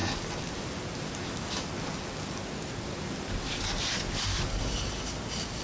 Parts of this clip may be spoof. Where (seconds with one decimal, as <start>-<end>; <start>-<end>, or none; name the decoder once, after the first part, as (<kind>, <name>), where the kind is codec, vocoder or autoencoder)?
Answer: none

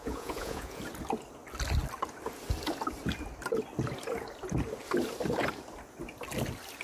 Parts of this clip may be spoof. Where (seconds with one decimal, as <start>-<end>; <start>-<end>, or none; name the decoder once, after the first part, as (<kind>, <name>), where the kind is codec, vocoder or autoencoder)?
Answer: 0.0-0.8 (vocoder, Vocos)